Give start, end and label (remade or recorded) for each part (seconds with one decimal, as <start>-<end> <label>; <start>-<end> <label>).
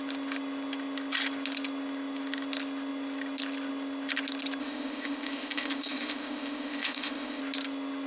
0.0-4.6 recorded; 4.6-7.4 remade; 7.4-8.1 recorded